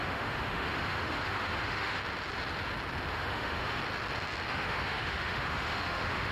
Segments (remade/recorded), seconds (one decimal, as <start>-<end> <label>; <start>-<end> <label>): 0.0-2.0 remade; 2.0-3.1 recorded; 3.1-3.8 remade; 3.8-4.5 recorded; 4.5-6.3 remade